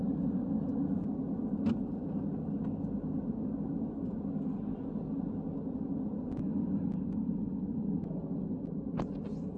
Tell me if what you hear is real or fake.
real